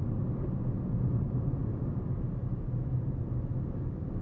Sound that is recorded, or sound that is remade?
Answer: recorded